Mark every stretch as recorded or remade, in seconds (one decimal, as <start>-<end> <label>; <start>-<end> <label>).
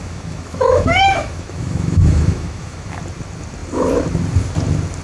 0.0-3.0 remade; 3.0-5.0 recorded